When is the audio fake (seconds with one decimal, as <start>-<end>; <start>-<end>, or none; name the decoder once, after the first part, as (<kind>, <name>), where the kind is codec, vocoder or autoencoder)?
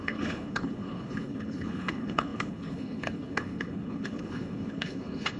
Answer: 0.0-5.4 (codec, HILCodec)